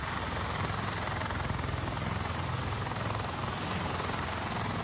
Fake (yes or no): no